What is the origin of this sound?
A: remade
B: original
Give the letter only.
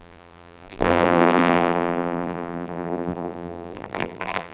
A